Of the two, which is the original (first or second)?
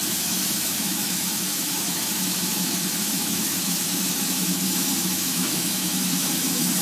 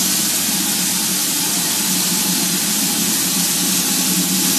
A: second